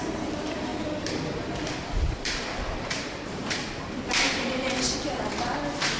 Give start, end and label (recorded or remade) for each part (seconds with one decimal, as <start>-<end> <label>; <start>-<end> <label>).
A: 0.0-3.6 remade; 3.6-6.0 recorded